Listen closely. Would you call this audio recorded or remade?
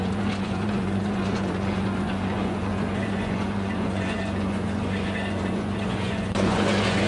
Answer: remade